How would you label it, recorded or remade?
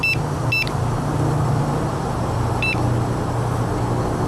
recorded